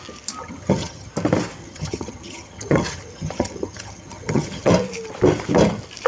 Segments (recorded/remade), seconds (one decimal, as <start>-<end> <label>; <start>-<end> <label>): 0.0-0.4 recorded; 0.4-1.1 remade; 1.1-1.6 recorded; 1.6-4.7 remade; 4.7-6.1 recorded